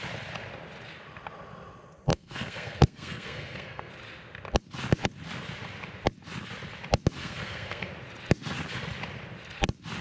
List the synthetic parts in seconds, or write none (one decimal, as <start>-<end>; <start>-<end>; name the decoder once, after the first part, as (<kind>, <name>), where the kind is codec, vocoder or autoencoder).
2.1-3.9 (codec, SNAC); 7.2-7.9